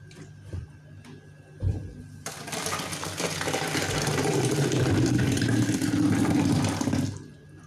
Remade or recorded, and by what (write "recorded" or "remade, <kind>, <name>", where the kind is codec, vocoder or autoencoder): remade, vocoder, BigVGAN v2